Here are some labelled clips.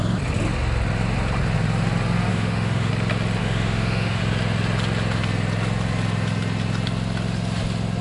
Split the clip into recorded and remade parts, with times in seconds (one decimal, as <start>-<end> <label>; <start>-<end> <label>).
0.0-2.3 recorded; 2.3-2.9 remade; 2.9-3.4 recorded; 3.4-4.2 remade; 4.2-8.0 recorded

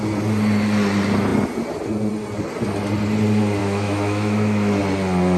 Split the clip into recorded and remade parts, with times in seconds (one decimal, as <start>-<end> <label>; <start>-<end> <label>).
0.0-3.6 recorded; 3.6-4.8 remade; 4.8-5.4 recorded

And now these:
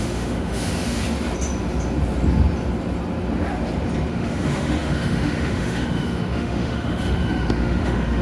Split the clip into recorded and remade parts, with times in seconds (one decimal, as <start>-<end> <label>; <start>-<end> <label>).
0.0-1.0 remade; 1.0-4.1 recorded; 4.1-8.2 remade

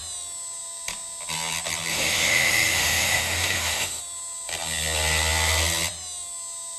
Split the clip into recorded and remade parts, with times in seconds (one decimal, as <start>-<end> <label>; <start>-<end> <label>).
0.0-1.9 recorded; 1.9-4.0 remade; 4.0-6.8 recorded